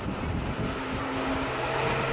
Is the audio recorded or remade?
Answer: recorded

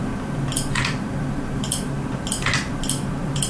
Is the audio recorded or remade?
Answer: remade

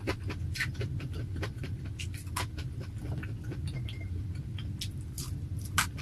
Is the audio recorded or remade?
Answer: recorded